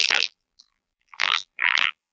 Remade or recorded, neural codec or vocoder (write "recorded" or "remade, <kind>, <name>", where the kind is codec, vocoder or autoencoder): remade, vocoder, BigVGAN v2